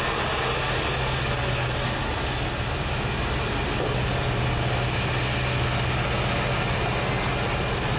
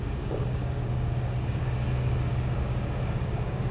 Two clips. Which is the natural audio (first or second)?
first